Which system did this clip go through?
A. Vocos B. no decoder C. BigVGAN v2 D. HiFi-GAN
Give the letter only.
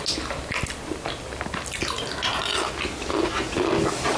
B